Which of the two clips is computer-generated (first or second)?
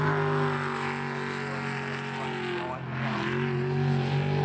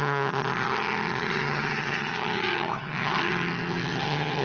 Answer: second